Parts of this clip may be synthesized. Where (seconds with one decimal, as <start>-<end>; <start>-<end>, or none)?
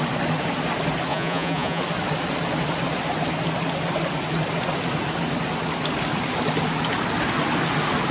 1.1-1.8